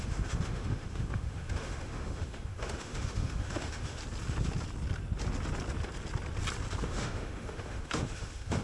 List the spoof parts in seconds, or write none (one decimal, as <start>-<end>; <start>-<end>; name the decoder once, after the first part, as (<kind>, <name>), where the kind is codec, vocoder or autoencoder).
0.0-4.0 (autoencoder, DAC-VAE); 6.8-8.6